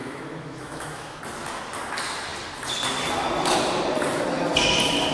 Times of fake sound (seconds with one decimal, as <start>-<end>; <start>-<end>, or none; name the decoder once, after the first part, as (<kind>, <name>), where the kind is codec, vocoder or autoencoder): 0.0-1.2 (autoencoder, DAC-VAE)